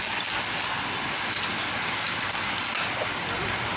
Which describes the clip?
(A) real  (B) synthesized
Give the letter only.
A